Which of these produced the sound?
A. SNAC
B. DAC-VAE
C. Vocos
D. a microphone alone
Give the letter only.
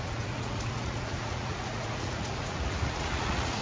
C